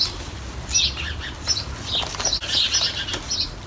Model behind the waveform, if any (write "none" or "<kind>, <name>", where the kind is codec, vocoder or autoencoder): none